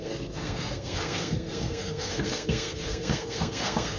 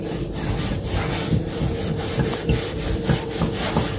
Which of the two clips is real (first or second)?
second